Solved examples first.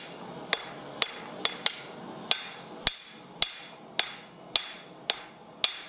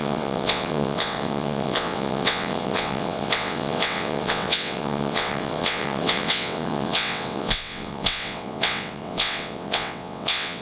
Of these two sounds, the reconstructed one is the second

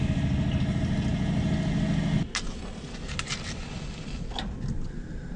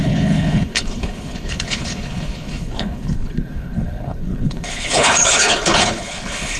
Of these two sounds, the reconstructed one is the second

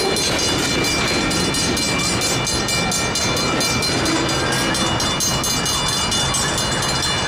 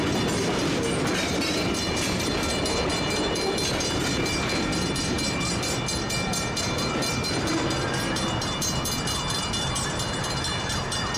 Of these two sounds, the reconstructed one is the second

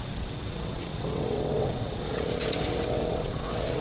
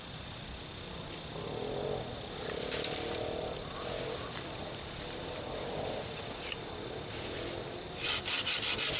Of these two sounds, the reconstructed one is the first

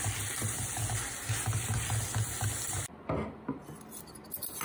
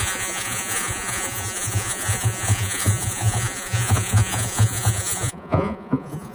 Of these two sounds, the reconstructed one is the second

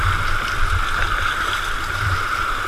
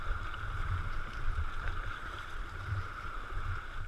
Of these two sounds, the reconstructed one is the second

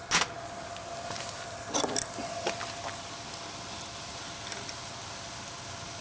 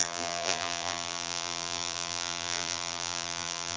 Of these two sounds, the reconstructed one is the second